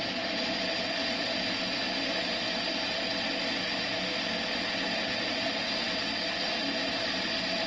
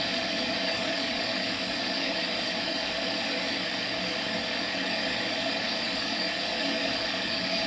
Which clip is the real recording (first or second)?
first